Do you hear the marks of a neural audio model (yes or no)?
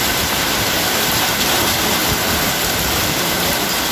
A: yes